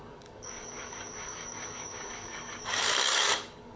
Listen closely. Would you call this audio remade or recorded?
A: remade